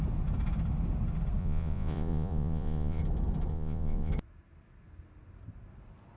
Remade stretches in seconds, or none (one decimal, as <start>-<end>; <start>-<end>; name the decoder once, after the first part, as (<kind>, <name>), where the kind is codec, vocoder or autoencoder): 1.4-3.0 (vocoder, Vocos); 3.5-4.1